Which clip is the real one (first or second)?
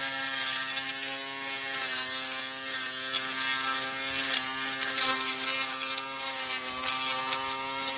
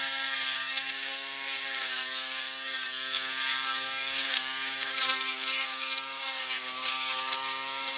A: first